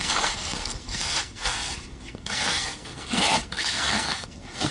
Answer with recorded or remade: remade